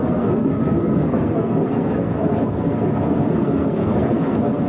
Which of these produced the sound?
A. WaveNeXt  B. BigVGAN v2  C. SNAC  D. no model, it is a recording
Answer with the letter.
C